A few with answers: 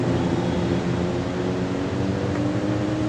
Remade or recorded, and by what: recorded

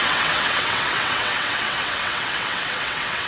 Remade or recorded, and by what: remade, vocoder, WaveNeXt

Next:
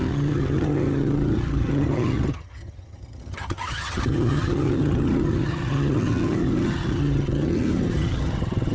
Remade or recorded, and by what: remade, vocoder, HiFi-GAN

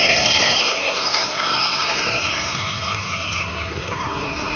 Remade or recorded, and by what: remade, codec, SNAC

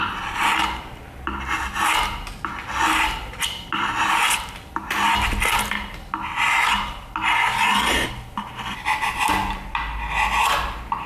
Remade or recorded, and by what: recorded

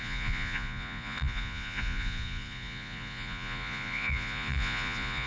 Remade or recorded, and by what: remade, vocoder, Vocos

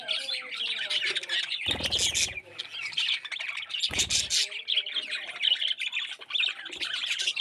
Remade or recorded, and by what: recorded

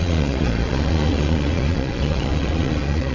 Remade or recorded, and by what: remade, vocoder, Vocos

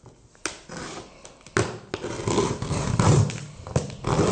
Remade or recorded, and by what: recorded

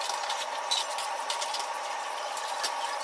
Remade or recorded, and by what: recorded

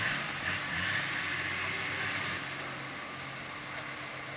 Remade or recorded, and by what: recorded